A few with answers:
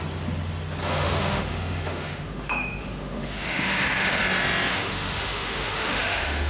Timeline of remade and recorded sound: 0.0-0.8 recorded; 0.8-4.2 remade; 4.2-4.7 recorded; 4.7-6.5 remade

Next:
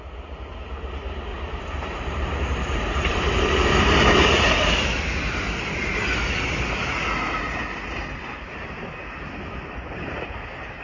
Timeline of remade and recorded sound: 0.0-1.3 recorded; 1.3-4.7 remade; 4.7-10.8 recorded

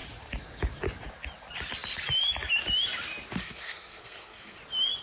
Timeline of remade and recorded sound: 0.0-3.4 recorded; 3.4-4.6 remade; 4.6-5.0 recorded